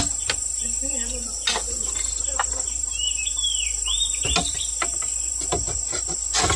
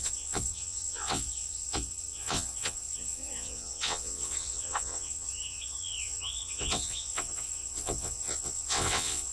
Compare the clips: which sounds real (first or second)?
first